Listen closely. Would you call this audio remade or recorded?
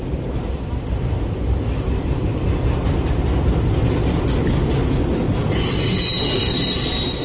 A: recorded